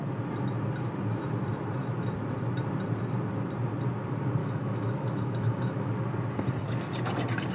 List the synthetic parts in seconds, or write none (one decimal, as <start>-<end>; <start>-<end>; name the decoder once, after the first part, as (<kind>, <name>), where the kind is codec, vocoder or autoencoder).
4.4-5.9 (autoencoder, DAC-VAE)